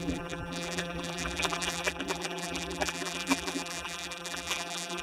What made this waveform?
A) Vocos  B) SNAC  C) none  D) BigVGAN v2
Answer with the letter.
D